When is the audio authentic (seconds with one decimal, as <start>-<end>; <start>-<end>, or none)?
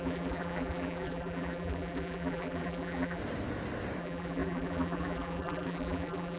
3.2-4.0